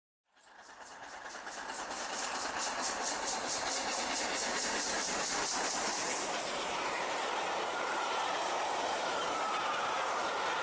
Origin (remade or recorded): remade